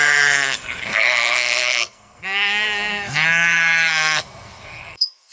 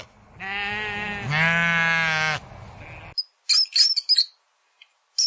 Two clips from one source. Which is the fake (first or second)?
first